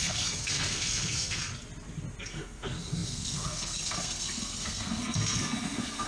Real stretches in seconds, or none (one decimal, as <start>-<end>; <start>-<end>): 1.5-2.2